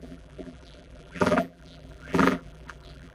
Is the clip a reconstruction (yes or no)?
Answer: yes